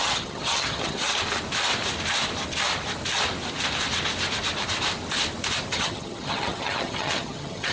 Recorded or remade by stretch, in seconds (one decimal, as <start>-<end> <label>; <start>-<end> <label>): 0.0-1.1 remade; 1.1-5.7 recorded; 5.7-7.7 remade